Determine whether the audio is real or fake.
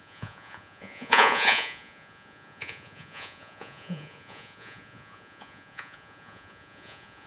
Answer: fake